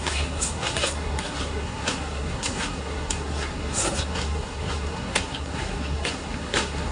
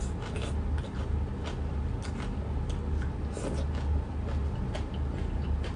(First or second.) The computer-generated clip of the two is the first